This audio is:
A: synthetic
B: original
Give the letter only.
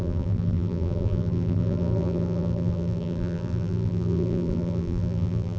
A